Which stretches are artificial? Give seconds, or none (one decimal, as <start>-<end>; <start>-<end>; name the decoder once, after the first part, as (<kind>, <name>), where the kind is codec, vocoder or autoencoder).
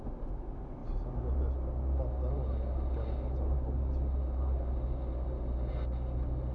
none